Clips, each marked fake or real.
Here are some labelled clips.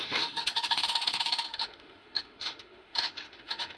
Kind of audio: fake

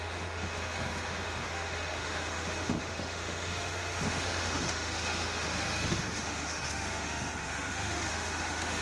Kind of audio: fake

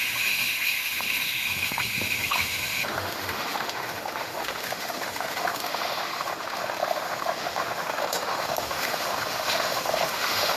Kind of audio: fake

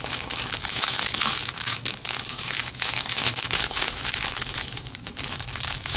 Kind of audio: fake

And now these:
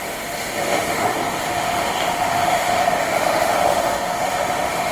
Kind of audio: fake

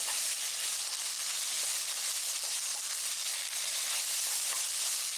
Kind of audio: real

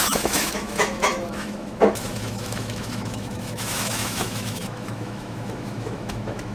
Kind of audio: fake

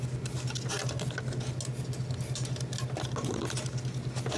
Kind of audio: real